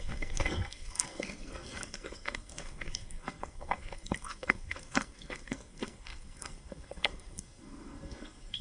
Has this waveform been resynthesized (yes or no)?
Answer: yes